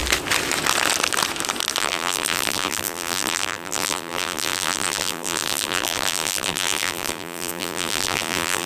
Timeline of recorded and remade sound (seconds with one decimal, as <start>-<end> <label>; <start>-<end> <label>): 0.0-1.8 recorded; 1.8-8.7 remade